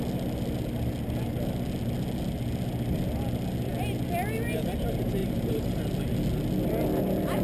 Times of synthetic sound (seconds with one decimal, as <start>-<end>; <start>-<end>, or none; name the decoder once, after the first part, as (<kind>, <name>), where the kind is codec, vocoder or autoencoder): 5.2-5.8 (vocoder, BigVGAN v2)